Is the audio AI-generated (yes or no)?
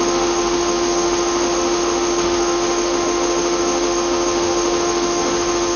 yes